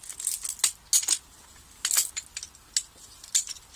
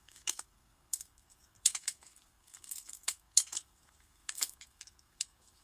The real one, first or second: first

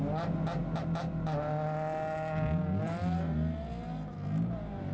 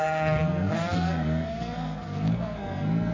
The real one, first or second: first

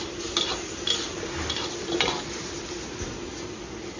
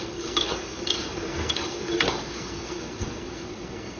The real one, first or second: first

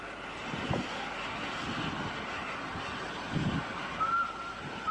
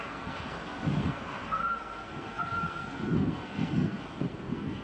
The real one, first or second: first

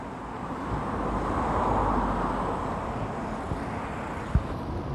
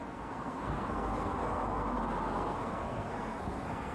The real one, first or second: first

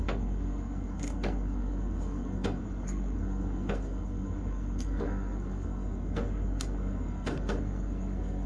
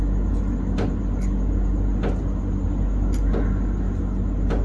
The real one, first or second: second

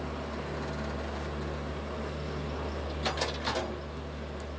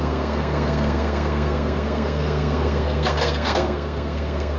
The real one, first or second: first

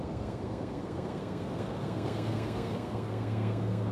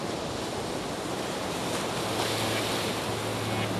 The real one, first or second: second